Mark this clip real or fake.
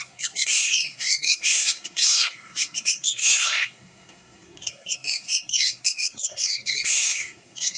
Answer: fake